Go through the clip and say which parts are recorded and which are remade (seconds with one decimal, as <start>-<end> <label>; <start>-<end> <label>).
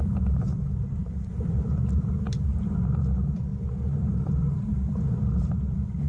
0.0-3.5 remade; 3.5-4.1 recorded; 4.1-6.1 remade